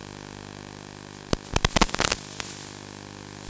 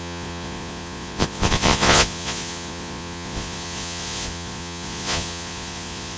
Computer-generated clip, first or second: second